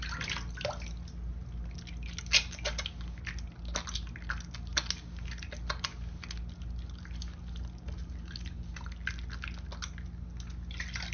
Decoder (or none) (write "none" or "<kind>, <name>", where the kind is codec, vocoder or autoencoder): none